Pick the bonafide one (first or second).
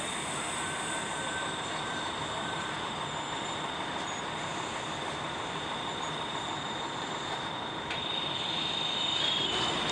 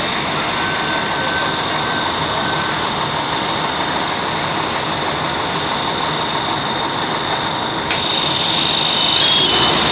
second